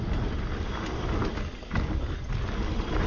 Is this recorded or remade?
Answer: recorded